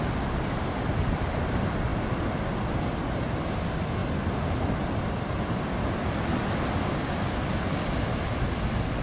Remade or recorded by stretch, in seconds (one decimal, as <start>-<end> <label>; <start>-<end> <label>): 0.0-9.0 recorded